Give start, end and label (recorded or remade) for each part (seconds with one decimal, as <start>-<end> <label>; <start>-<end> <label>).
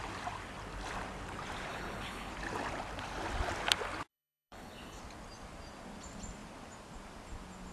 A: 0.0-1.7 recorded; 1.7-2.3 remade; 2.3-4.1 recorded; 4.1-5.0 remade; 5.0-7.7 recorded